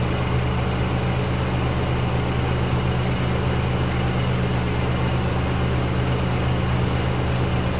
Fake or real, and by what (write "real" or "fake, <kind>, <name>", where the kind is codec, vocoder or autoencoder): real